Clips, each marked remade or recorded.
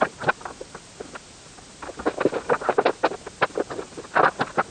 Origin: recorded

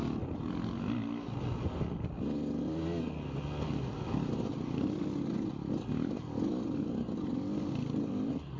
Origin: recorded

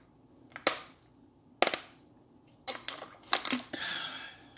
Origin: recorded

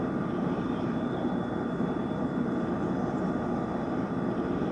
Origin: remade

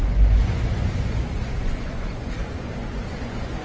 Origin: remade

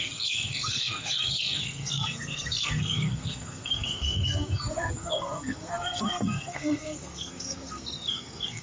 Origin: remade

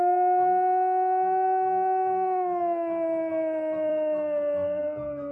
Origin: recorded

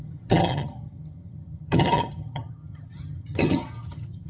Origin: remade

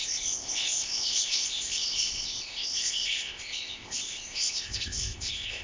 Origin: remade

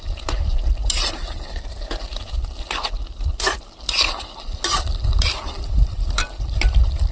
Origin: recorded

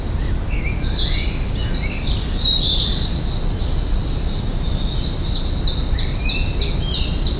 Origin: recorded